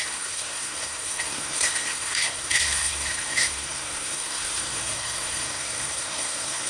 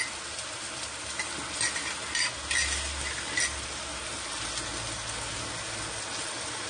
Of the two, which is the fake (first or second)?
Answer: first